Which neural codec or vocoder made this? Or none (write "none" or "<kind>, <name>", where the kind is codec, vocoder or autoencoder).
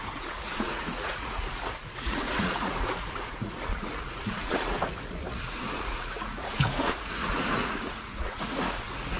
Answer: vocoder, Vocos